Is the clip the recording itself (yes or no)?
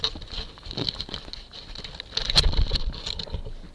yes